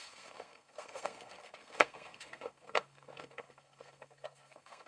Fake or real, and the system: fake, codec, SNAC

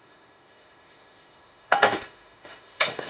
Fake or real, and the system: fake, autoencoder, DAC-VAE